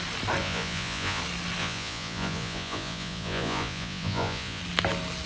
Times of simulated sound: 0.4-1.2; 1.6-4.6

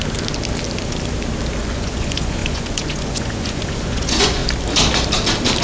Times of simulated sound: 1.6-4.4

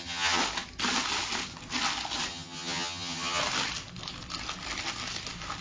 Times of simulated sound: 0.0-0.4; 2.3-3.4

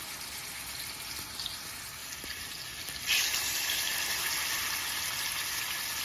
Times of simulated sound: none

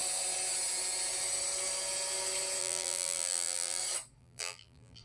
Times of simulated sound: 2.6-3.8; 4.2-5.0

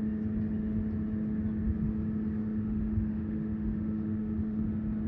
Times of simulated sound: 2.4-4.6

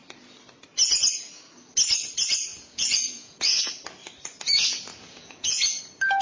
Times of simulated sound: 2.5-3.7; 4.9-5.8

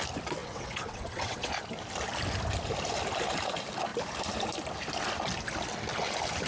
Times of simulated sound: 0.4-1.5